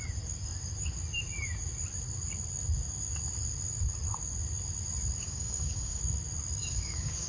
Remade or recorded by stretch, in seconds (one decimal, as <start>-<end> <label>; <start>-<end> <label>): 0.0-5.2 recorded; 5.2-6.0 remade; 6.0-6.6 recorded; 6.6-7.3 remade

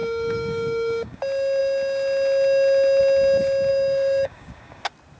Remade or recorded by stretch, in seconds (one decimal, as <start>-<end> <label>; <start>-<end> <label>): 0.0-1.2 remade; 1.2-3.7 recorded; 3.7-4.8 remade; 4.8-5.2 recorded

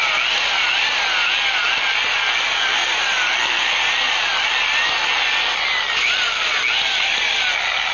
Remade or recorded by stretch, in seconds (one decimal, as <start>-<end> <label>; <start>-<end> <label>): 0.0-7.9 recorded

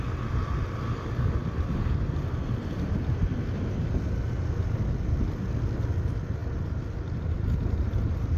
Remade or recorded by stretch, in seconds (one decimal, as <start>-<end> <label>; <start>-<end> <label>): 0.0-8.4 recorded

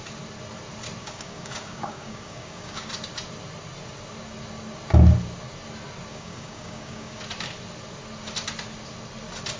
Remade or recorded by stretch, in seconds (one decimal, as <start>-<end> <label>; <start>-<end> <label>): 0.0-1.0 recorded; 1.0-2.9 remade; 2.9-6.1 recorded; 6.1-7.2 remade; 7.2-9.6 recorded

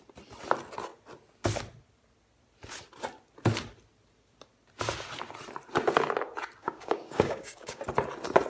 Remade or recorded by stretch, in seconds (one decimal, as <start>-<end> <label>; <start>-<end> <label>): 0.0-6.6 recorded; 6.6-7.8 remade; 7.8-8.5 recorded

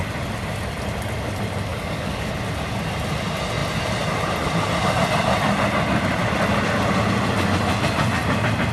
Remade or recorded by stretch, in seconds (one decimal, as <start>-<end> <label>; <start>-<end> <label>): 0.0-1.7 recorded; 1.7-2.3 remade; 2.3-8.7 recorded